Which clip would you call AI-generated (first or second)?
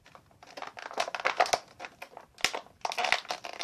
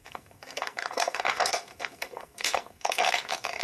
second